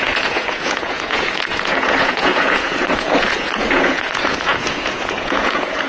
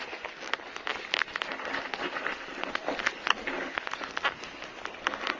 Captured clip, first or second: second